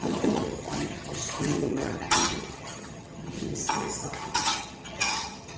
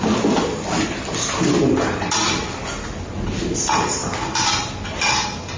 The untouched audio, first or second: second